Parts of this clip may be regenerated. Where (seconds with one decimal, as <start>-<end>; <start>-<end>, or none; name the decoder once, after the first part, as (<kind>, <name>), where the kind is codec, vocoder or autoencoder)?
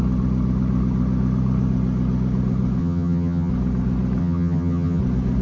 2.8-3.5 (vocoder, HiFi-GAN); 4.2-5.0